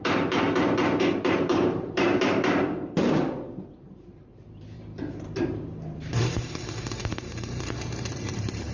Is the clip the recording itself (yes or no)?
no